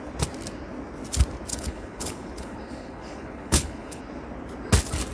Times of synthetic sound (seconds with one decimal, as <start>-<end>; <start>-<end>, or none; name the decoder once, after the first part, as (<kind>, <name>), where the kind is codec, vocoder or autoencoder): 1.5-4.0 (codec, HILCodec)